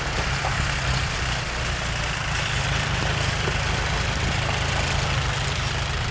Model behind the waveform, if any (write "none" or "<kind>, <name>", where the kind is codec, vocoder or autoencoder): none